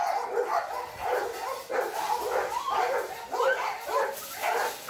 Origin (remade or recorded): recorded